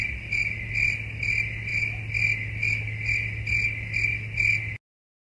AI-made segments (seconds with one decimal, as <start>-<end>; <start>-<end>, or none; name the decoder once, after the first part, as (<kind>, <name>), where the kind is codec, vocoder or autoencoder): none